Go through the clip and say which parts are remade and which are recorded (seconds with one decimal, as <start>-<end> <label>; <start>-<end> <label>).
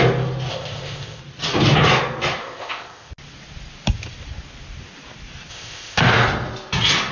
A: 0.0-0.5 recorded; 0.5-1.2 remade; 1.2-2.4 recorded; 2.4-3.1 remade; 3.1-5.5 recorded; 5.5-6.0 remade; 6.0-7.1 recorded